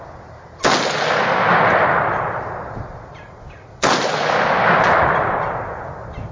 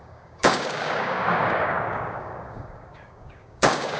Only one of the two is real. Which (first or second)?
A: first